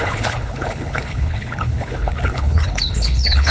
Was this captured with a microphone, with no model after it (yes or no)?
no